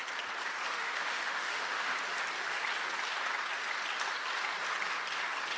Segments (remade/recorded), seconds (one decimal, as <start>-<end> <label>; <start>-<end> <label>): 0.0-0.7 recorded; 0.7-1.9 remade; 1.9-5.6 recorded